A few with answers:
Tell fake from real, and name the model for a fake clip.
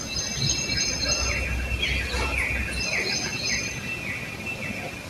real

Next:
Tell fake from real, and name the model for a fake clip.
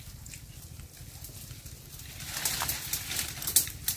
real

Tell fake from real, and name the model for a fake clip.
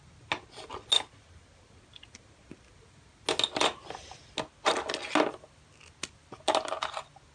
real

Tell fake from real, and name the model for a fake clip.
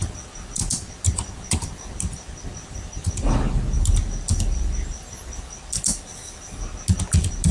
real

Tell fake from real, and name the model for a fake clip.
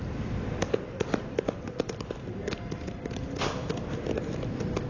real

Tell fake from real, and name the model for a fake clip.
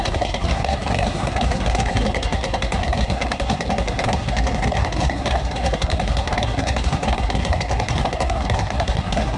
fake, codec, SNAC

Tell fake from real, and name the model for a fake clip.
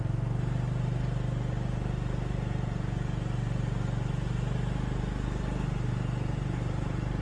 real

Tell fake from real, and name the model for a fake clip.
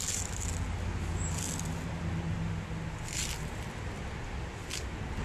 real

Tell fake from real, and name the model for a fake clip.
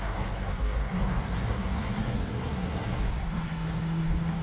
fake, codec, SNAC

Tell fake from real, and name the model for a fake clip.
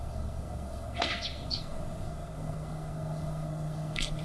fake, codec, SNAC